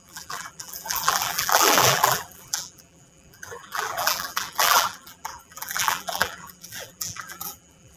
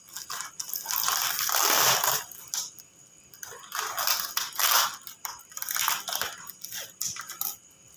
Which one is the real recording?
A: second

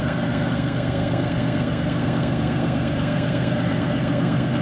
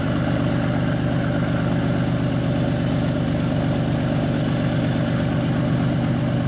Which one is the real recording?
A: second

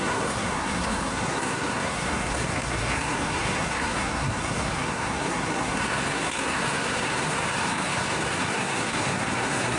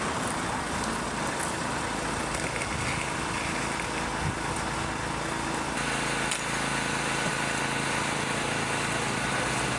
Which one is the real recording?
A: second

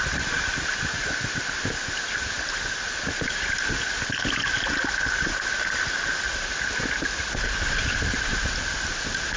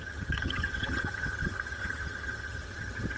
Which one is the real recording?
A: first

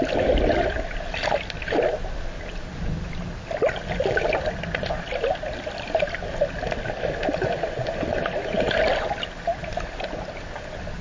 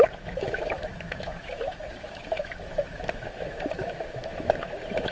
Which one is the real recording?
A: first